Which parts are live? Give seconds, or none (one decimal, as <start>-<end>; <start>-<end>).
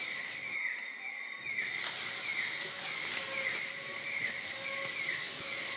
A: 0.0-5.8